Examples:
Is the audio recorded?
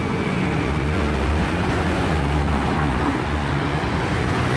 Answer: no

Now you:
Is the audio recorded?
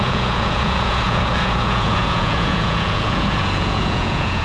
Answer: no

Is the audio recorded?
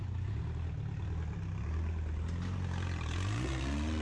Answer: yes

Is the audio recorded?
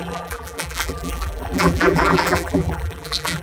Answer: no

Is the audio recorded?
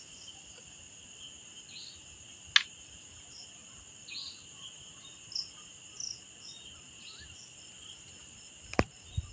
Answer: yes